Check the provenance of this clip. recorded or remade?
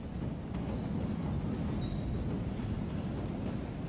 recorded